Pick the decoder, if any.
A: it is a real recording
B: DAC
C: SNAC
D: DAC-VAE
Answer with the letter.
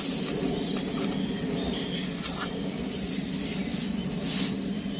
A